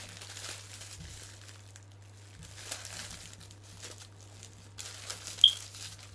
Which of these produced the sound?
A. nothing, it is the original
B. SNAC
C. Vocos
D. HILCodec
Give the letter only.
A